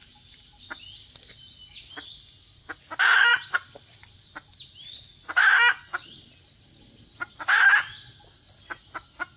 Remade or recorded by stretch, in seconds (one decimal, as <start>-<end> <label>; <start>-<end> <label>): 0.0-9.4 recorded